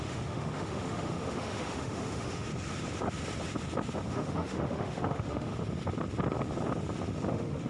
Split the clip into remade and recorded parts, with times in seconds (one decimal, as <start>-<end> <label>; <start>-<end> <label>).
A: 0.0-2.5 remade; 2.5-4.1 recorded; 4.1-5.5 remade; 5.5-7.3 recorded; 7.3-7.7 remade

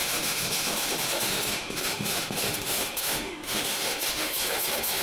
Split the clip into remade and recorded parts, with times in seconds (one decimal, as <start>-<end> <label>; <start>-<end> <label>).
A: 0.0-5.0 remade